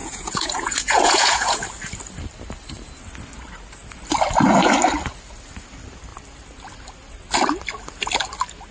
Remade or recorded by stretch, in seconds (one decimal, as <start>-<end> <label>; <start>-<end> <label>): 0.0-1.6 remade; 1.6-8.7 recorded